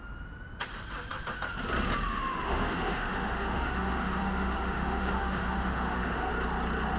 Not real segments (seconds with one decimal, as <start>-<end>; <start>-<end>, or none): 2.1-6.3